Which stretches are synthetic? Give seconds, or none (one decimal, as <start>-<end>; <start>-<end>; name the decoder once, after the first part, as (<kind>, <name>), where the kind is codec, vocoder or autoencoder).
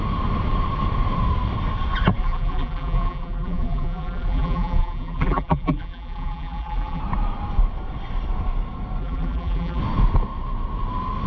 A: 2.2-7.0 (vocoder, BigVGAN v2); 9.0-9.8